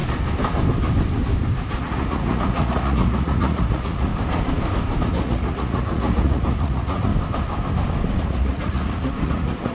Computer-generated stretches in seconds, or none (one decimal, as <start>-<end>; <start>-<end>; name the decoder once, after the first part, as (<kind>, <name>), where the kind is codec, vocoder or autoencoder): 1.8-4.1 (vocoder, Vocos); 5.1-7.1; 8.2-9.7